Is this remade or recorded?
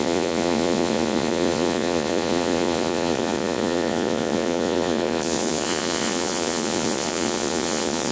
remade